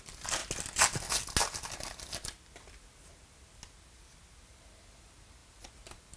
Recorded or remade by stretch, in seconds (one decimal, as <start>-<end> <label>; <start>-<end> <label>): 0.0-6.2 recorded